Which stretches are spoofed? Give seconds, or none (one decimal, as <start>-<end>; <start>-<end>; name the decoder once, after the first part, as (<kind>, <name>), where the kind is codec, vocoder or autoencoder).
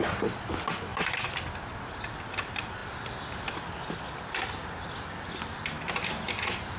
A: 0.9-1.4 (vocoder, BigVGAN v2)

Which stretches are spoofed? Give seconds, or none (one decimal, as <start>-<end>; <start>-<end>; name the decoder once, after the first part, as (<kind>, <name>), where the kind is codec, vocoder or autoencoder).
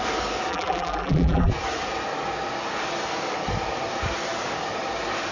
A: 0.5-1.5 (vocoder, BigVGAN v2)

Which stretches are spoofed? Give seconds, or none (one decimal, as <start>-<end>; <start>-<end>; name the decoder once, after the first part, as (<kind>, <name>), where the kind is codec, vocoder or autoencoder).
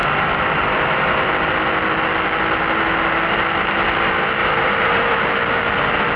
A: 4.4-5.2 (vocoder, BigVGAN v2)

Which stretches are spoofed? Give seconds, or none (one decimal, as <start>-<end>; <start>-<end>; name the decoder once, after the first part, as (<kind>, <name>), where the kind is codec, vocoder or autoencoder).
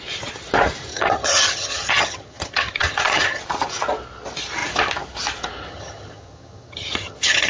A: 0.9-3.4 (vocoder, HiFi-GAN); 5.7-7.5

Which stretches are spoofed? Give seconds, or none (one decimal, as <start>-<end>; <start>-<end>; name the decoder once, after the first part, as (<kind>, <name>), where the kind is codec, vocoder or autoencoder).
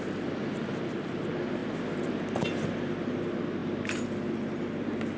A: none